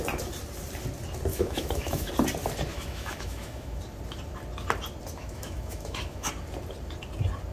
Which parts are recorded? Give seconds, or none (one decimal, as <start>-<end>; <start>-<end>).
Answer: 0.0-1.3; 2.1-2.7; 3.8-5.2; 6.3-7.5